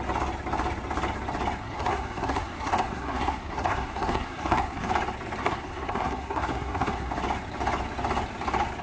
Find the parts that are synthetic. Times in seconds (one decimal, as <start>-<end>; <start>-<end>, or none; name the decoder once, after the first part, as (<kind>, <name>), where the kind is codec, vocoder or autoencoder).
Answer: 1.6-4.9 (codec, SNAC); 5.4-7.1